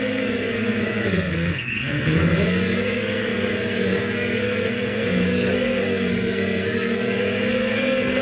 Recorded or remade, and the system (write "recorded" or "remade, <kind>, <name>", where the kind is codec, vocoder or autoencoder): remade, codec, SNAC